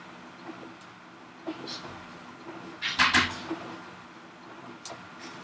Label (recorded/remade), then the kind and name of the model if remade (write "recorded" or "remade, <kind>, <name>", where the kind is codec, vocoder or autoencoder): recorded